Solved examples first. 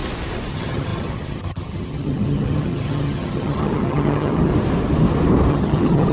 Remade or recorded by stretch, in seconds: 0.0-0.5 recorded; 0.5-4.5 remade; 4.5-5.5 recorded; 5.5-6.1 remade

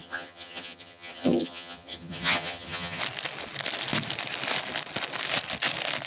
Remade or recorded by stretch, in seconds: 0.0-3.0 remade; 3.0-6.1 recorded

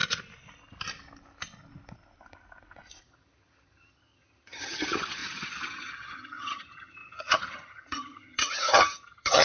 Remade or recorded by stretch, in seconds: 0.0-3.0 recorded; 3.0-9.4 remade

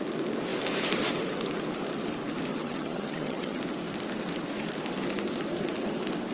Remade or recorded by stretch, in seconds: 0.0-2.5 recorded; 2.5-3.6 remade; 3.6-6.3 recorded